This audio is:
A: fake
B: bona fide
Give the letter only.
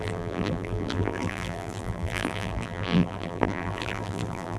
A